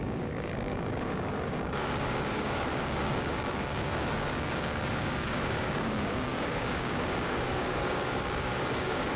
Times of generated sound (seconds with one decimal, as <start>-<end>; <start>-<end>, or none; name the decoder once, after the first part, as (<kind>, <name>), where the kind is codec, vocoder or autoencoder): 0.0-9.2 (codec, DAC)